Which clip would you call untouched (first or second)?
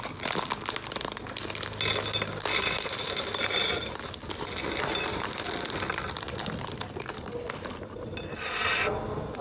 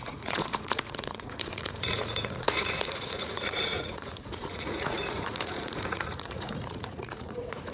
first